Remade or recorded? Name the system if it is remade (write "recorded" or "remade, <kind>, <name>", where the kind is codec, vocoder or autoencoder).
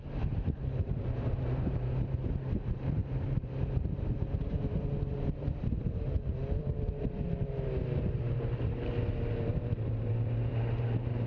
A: remade, vocoder, BigVGAN v2